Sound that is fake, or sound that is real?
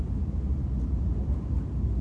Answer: real